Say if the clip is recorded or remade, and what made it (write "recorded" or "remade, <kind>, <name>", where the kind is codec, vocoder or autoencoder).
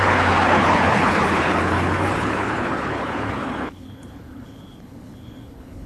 remade, codec, HILCodec